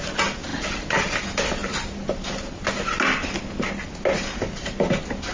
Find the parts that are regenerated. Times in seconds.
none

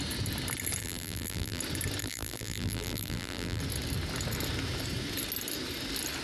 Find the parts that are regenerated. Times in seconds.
0.8-1.6; 2.0-3.6

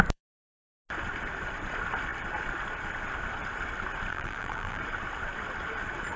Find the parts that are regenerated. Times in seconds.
4.1-4.8

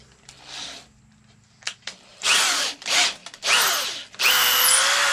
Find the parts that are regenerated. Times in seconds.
2.1-2.7